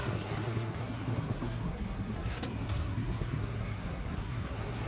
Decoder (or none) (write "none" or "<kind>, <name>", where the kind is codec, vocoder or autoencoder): codec, SNAC